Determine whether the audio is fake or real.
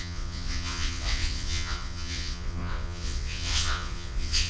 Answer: fake